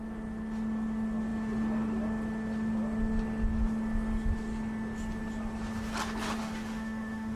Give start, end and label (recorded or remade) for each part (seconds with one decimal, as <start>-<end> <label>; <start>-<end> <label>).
0.0-6.4 recorded; 6.4-7.4 remade